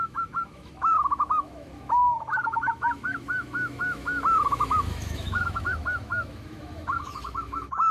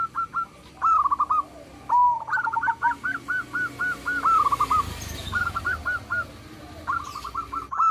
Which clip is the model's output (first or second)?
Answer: first